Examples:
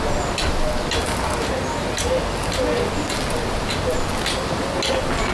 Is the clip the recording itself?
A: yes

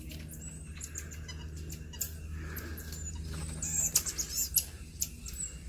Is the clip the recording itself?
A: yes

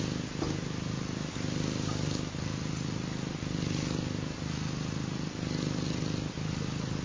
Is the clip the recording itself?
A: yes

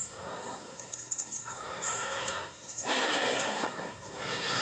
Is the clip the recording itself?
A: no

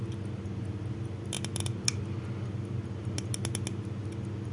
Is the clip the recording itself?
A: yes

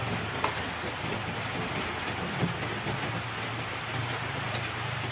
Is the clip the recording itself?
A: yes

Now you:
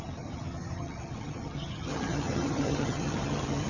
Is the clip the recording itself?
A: no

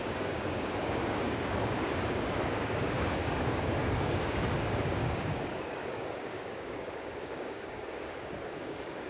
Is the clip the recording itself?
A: no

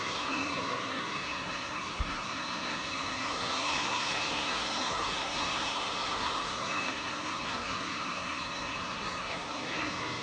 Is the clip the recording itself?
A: no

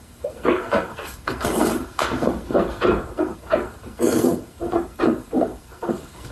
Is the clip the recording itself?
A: no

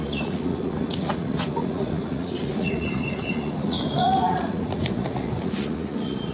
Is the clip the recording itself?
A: no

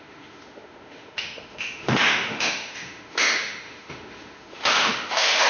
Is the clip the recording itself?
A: no